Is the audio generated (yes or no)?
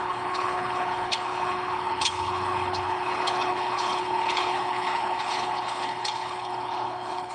yes